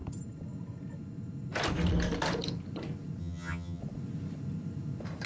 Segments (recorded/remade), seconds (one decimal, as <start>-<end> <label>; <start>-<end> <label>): 0.0-3.2 recorded; 3.2-3.8 remade; 3.8-5.3 recorded